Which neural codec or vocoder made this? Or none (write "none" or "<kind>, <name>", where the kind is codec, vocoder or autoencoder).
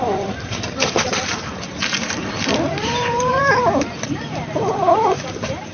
vocoder, BigVGAN v2